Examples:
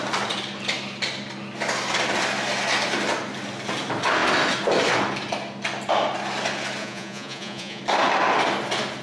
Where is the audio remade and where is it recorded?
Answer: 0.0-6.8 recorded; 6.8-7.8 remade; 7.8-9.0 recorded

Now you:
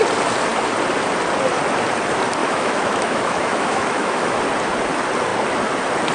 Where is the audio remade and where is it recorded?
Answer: 0.0-2.4 recorded; 2.4-4.4 remade; 4.4-6.1 recorded

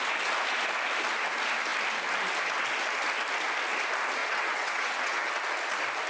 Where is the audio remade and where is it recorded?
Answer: 0.0-4.2 recorded; 4.2-5.3 remade; 5.3-6.1 recorded

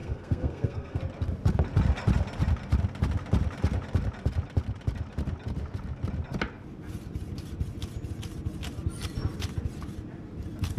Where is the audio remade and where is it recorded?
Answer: 0.0-1.0 remade; 1.0-10.8 recorded

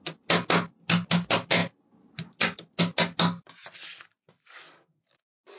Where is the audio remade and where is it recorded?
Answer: 0.0-5.6 recorded

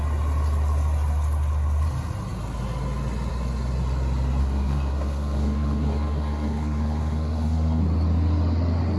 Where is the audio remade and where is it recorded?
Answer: 0.0-4.4 recorded; 4.4-7.8 remade; 7.8-9.0 recorded

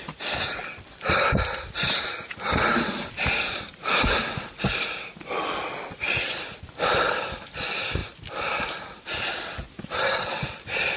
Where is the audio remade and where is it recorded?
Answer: 0.0-11.0 recorded